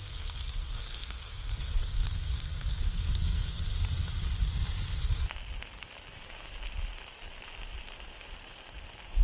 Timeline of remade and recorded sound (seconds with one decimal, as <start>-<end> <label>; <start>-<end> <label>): 0.0-3.7 remade; 3.7-9.2 recorded